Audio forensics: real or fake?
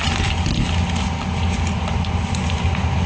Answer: real